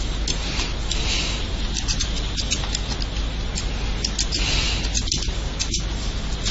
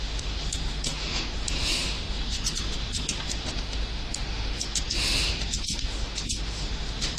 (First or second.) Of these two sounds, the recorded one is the first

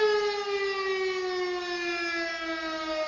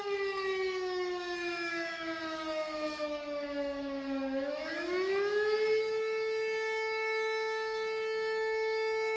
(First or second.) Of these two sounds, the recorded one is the first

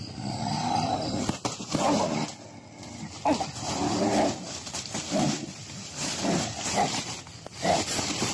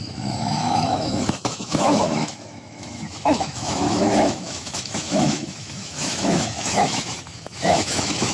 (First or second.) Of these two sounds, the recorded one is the first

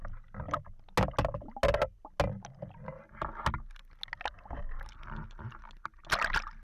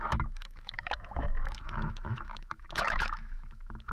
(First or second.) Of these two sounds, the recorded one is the first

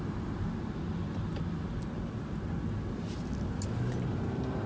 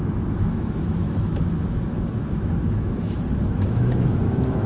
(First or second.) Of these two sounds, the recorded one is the first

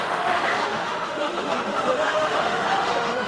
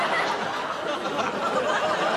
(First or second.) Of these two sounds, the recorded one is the second